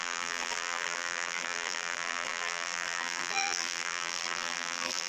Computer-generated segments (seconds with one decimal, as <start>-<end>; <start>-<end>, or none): 0.0-5.1